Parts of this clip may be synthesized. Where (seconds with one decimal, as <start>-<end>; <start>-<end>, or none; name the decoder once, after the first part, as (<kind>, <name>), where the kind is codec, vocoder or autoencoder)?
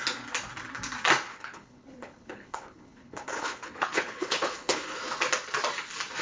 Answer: 1.3-5.0 (codec, HILCodec)